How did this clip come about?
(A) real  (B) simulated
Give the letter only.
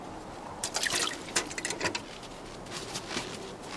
A